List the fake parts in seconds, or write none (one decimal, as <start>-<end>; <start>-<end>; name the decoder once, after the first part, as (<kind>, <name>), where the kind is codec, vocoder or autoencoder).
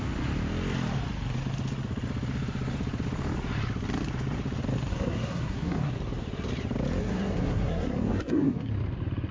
4.9-5.9 (codec, SNAC); 7.0-8.7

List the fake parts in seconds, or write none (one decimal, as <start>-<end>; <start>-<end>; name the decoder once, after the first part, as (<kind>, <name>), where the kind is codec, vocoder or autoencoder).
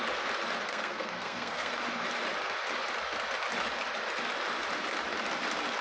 0.7-1.7 (codec, SNAC)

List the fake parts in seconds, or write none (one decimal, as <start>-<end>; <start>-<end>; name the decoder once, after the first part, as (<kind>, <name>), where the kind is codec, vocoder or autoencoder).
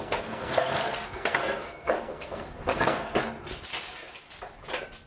0.0-3.1 (codec, SNAC)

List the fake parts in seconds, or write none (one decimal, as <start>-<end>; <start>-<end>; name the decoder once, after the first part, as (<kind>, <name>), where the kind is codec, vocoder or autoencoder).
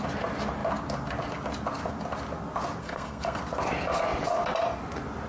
2.8-3.4 (codec, SNAC)